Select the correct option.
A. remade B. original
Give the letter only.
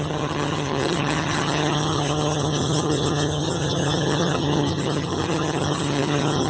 A